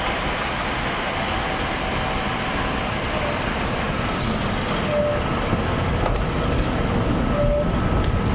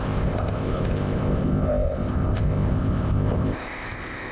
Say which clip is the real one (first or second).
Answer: first